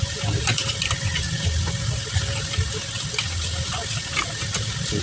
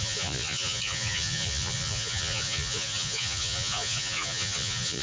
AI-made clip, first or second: second